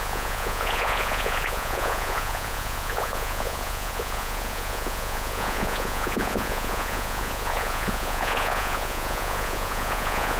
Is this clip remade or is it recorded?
remade